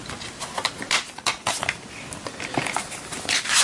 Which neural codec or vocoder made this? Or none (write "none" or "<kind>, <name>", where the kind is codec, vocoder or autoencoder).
none